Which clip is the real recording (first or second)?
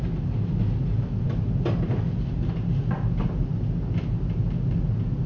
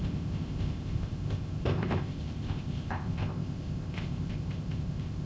first